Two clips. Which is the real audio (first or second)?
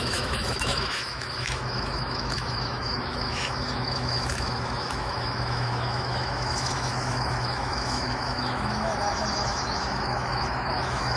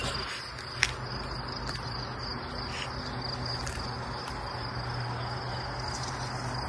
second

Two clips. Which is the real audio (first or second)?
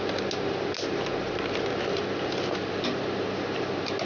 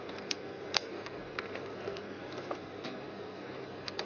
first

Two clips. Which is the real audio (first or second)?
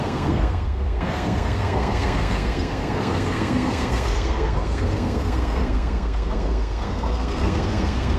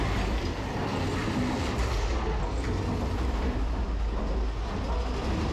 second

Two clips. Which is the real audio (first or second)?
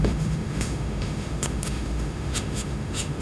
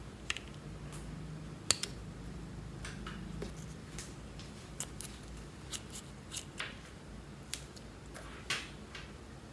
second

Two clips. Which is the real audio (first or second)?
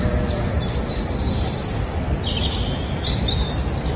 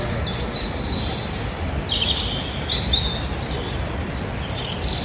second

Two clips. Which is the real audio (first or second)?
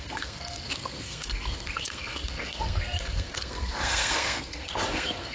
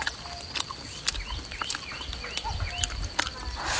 second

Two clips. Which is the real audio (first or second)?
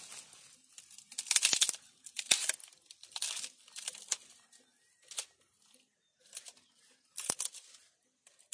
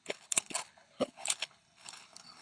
first